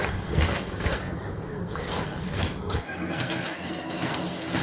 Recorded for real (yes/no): no